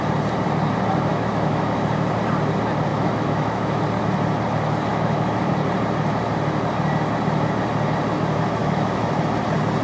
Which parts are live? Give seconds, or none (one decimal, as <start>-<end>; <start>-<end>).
0.0-1.1; 1.8-2.9; 3.8-4.9; 5.5-8.6; 9.1-9.8